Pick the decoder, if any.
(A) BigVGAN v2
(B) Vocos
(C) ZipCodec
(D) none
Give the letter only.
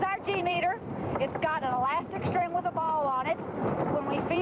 A